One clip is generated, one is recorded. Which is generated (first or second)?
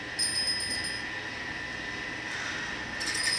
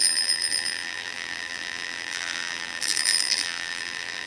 second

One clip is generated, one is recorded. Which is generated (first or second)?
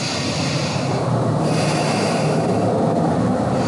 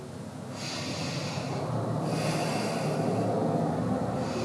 first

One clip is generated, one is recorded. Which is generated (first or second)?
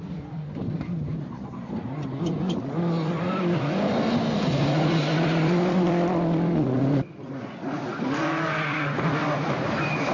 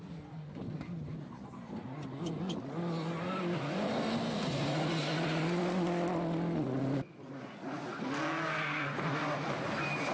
first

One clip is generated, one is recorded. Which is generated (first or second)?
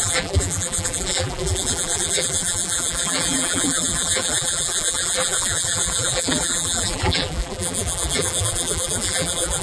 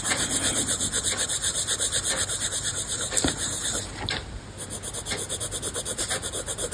first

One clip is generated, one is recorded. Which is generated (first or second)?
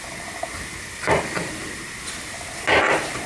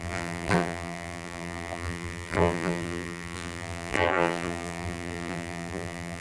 second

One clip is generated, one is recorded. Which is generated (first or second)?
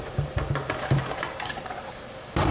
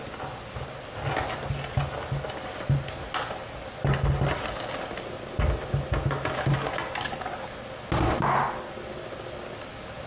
first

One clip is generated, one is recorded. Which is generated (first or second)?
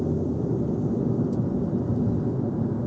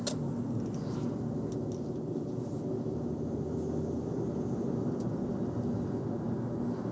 first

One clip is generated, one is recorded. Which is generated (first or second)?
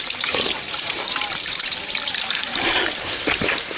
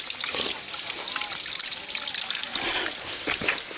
first